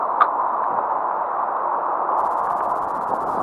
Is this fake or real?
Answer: real